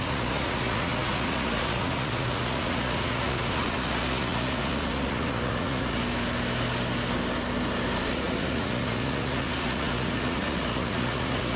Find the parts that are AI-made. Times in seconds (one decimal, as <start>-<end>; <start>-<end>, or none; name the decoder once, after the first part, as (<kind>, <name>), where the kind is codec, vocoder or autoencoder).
0.0-6.0 (vocoder, Vocos); 8.1-11.6